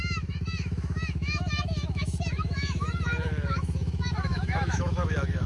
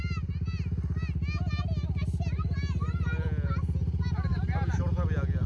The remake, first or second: first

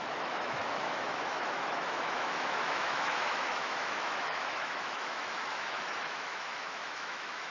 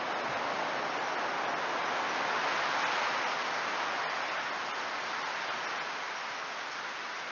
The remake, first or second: first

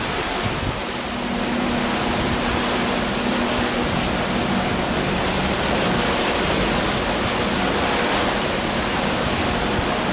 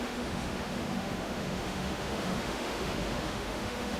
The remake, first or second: second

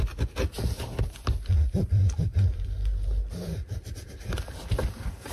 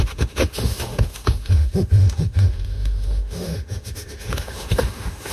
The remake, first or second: second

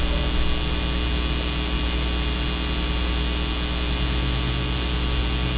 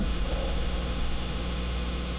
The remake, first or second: second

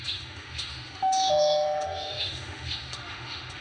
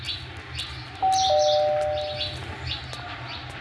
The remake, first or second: first